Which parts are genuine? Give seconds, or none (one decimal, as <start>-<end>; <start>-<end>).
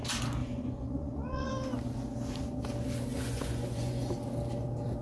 0.0-0.4; 1.5-3.1; 4.1-5.0